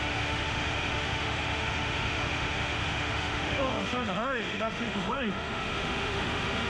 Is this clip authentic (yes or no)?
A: no